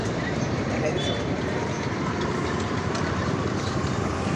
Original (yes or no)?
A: no